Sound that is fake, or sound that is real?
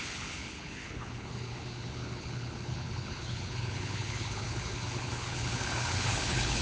fake